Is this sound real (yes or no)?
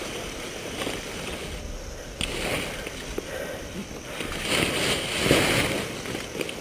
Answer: yes